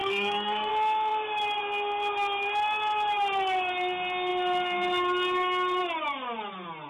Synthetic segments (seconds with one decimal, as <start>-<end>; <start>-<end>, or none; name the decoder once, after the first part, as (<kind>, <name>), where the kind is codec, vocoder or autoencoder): 0.0-0.7 (codec, SNAC)